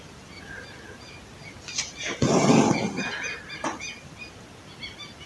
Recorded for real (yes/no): yes